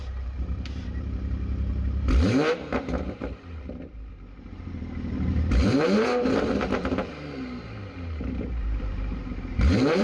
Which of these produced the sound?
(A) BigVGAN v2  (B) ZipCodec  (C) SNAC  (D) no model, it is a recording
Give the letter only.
A